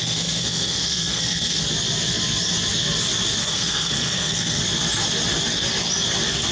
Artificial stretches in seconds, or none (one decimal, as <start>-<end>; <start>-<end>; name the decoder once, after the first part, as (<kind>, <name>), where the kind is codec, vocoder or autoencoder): 0.0-1.6 (codec, SNAC); 3.4-4.6